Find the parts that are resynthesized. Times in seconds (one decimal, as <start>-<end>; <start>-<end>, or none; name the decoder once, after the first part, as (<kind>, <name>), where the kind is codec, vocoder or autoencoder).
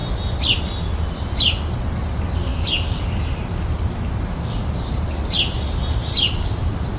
none